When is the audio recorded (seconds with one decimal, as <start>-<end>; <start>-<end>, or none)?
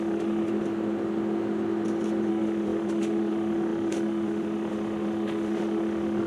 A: 0.5-2.3